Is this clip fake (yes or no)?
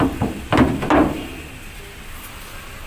no